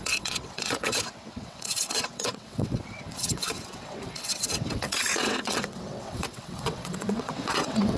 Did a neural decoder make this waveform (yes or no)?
yes